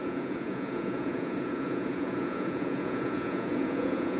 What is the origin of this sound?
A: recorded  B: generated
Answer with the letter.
B